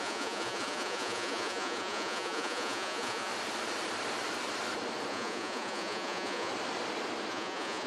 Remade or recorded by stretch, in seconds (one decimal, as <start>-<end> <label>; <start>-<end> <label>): 0.0-3.3 remade; 3.3-5.1 recorded; 5.1-6.5 remade; 6.5-7.3 recorded; 7.3-7.9 remade